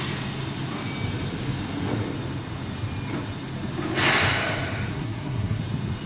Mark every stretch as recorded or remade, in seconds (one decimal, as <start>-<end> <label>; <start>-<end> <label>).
0.0-4.9 recorded; 4.9-5.6 remade; 5.6-6.1 recorded